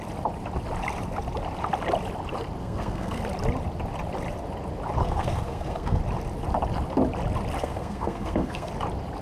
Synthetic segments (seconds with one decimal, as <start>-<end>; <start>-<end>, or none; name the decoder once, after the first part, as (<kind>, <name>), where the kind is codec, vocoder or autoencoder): 2.6-3.2 (codec, SNAC); 5.0-6.0; 7.6-8.7